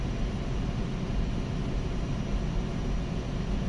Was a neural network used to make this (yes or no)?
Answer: no